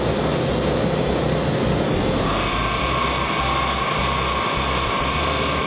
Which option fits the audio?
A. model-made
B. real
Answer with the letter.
B